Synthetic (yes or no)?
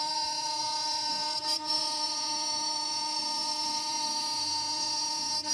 yes